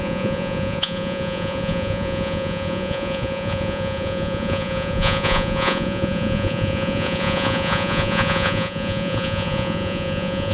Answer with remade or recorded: remade